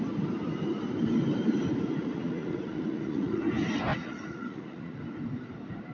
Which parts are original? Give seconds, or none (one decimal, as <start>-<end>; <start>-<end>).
0.0-2.0; 3.4-3.9; 5.0-5.9